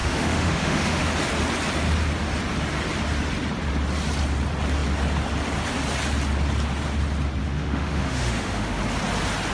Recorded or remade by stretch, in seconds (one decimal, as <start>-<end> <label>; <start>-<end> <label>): 0.0-1.1 remade; 1.1-7.4 recorded; 7.4-8.8 remade; 8.8-9.5 recorded